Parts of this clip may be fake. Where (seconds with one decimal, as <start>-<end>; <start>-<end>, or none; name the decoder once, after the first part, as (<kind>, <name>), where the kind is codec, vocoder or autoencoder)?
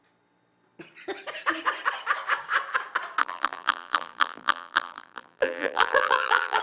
3.2-6.6 (vocoder, BigVGAN v2)